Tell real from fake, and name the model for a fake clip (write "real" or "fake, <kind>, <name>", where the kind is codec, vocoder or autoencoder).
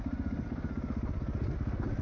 real